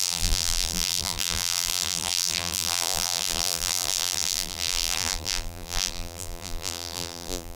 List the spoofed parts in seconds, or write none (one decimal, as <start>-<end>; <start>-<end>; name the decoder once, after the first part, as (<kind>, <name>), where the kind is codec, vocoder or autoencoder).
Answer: 0.0-7.6 (vocoder, BigVGAN v2)